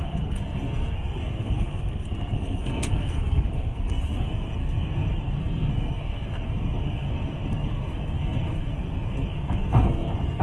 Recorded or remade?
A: remade